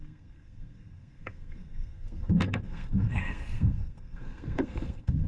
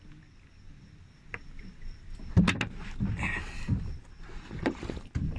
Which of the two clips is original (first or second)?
second